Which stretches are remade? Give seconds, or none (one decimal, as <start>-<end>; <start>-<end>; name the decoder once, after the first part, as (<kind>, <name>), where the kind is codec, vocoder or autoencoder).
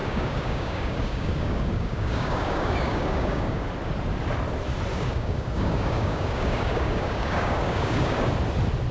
0.0-3.7 (codec, DAC); 4.9-8.3